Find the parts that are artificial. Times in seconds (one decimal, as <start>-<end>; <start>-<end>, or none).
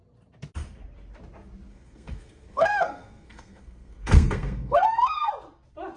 1.7-5.3